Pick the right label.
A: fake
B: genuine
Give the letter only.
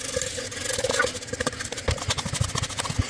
B